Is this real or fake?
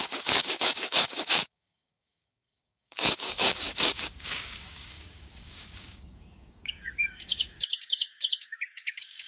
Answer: fake